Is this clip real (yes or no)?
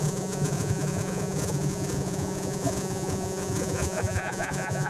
no